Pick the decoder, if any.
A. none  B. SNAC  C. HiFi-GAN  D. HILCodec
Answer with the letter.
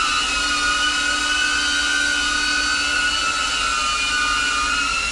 A